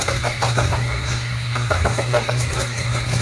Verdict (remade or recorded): remade